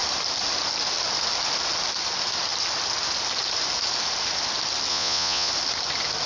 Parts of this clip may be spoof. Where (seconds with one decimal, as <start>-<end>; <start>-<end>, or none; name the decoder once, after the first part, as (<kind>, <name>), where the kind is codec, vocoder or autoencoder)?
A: 4.9-5.5 (vocoder, Vocos)